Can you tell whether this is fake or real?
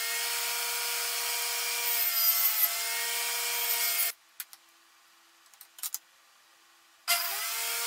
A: real